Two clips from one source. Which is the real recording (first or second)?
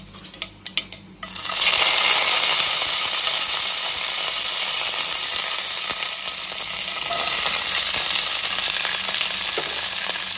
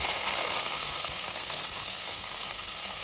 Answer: first